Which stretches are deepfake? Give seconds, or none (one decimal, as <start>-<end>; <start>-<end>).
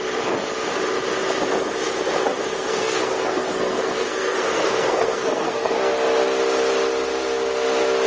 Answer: 2.2-5.9